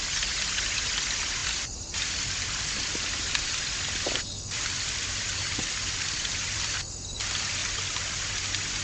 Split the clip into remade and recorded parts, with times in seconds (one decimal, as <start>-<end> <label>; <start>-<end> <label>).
0.0-1.4 recorded; 1.4-2.1 remade; 2.1-2.9 recorded; 2.9-6.8 remade; 6.8-7.6 recorded; 7.6-8.3 remade; 8.3-8.8 recorded